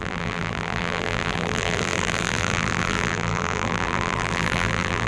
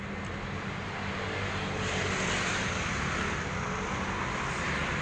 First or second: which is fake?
first